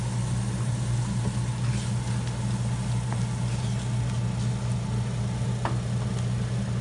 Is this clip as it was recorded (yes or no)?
yes